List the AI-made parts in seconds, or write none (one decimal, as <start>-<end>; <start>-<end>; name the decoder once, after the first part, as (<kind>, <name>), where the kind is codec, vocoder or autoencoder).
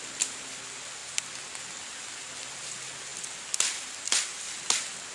none